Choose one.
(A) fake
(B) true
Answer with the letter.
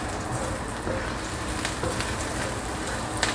B